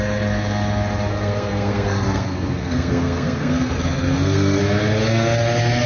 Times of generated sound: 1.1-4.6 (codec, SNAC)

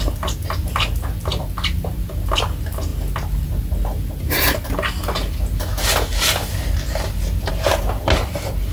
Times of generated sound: none